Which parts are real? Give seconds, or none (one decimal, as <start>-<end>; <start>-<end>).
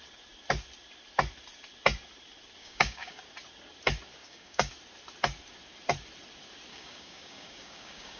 0.0-2.6; 3.2-4.2; 4.7-6.7